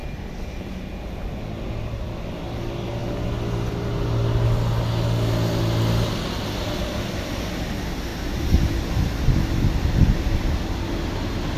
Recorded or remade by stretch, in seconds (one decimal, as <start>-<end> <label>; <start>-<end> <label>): 0.0-11.6 recorded